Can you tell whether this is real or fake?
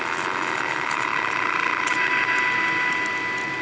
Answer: real